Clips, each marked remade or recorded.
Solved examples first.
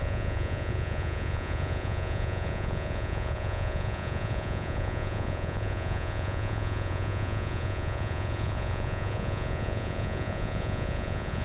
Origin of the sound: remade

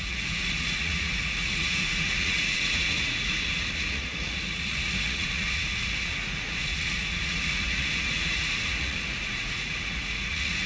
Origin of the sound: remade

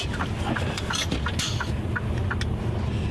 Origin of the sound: recorded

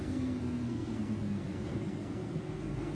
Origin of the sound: remade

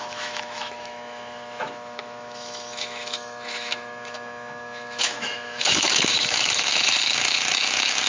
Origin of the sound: remade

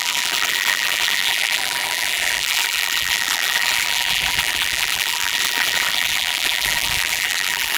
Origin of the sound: remade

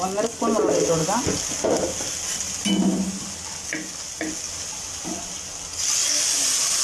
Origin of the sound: recorded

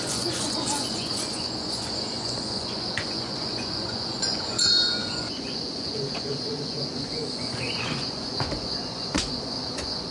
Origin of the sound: remade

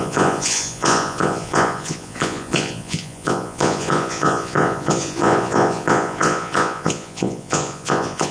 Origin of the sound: remade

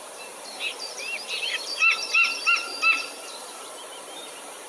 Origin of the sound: remade